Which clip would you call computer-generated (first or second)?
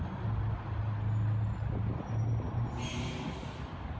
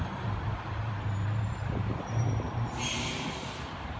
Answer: second